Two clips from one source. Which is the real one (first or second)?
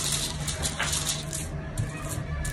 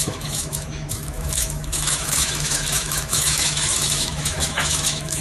first